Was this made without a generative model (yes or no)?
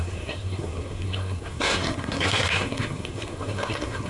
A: no